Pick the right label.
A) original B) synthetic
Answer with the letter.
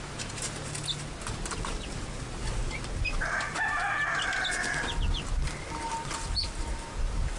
A